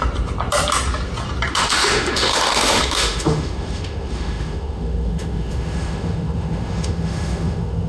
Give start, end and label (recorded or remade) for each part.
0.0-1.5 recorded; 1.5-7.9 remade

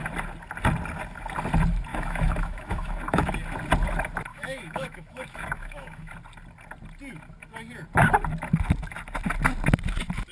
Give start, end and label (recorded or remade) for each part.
0.0-1.9 recorded; 1.9-3.3 remade; 3.3-4.3 recorded; 4.3-6.1 remade; 6.1-10.3 recorded

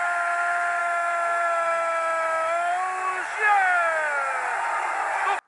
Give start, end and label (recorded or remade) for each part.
0.0-0.8 recorded; 0.8-2.7 remade; 2.7-5.5 recorded